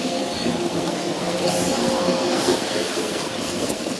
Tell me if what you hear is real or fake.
fake